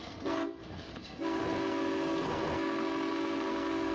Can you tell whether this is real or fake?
fake